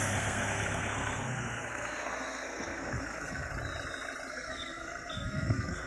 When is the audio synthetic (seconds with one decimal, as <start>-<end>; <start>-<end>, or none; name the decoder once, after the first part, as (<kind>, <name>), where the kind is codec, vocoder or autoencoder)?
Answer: 0.0-3.5 (codec, SNAC); 4.3-5.9